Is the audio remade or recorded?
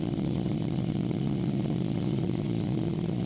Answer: remade